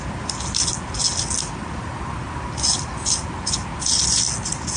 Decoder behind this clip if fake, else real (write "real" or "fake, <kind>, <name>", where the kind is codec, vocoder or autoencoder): real